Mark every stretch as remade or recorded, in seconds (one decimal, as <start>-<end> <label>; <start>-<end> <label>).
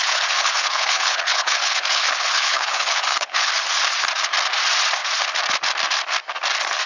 0.0-3.5 remade; 3.5-6.9 recorded